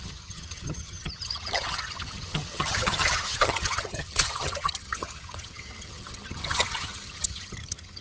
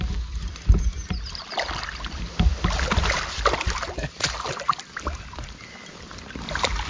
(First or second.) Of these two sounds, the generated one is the first